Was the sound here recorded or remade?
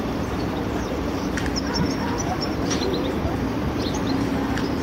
remade